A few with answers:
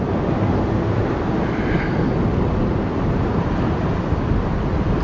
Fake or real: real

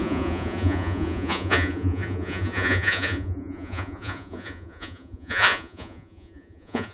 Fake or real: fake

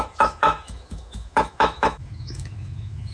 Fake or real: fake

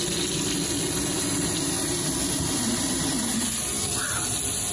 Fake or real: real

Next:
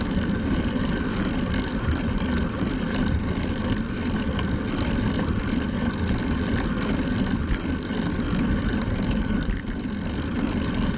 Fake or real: real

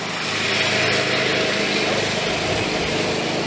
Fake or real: real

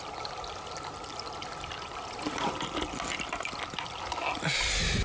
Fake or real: real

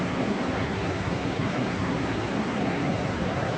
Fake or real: fake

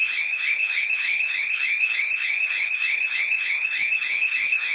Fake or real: fake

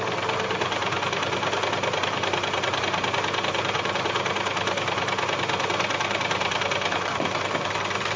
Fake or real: real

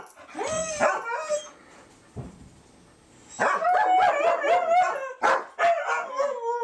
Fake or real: real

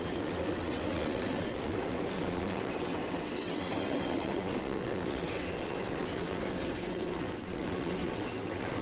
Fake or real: fake